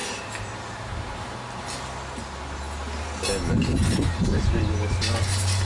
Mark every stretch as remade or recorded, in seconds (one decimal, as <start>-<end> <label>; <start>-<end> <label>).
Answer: 0.0-1.6 remade; 1.6-3.8 recorded; 3.8-5.7 remade